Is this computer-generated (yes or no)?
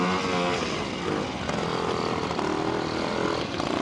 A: no